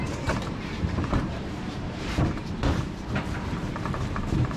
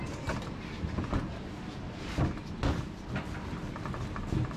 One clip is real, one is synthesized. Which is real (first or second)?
second